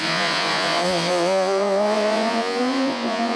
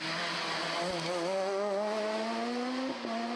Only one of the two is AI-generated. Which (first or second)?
first